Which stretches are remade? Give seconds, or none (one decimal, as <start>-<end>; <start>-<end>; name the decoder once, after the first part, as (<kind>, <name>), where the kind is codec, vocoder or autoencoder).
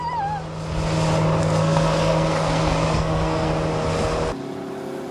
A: 1.4-3.5 (codec, SNAC)